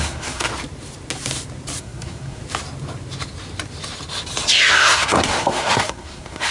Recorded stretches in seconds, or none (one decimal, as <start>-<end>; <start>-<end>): 0.5-1.8; 2.4-4.7